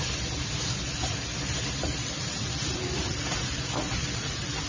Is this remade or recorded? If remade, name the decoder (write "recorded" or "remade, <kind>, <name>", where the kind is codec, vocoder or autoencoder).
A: recorded